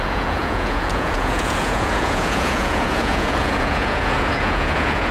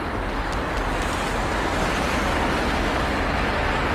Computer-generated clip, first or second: first